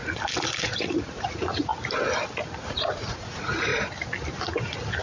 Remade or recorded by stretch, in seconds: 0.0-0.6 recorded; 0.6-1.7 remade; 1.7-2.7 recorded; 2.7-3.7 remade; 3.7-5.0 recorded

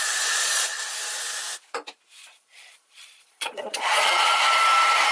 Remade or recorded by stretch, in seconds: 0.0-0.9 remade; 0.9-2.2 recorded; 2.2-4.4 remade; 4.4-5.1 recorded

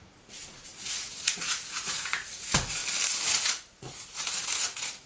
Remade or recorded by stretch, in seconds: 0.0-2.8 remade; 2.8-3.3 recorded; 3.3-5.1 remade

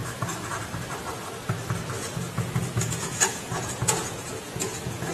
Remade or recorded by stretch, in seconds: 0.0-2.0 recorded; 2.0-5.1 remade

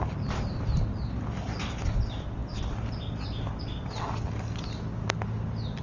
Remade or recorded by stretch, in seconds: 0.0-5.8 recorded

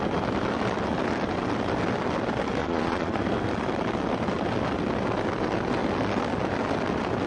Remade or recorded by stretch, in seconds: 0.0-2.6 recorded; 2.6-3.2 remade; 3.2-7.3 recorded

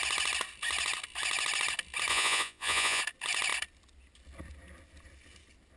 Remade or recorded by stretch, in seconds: 0.0-2.1 recorded; 2.1-3.0 remade; 3.0-5.8 recorded